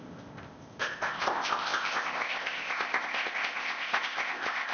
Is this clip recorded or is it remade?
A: remade